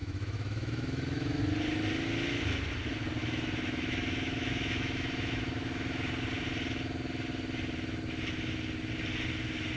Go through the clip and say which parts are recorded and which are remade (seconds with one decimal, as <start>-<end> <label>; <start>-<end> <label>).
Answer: 0.0-1.4 remade; 1.4-3.2 recorded; 3.2-6.1 remade; 6.1-9.8 recorded